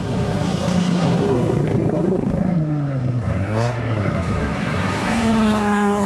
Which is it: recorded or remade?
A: remade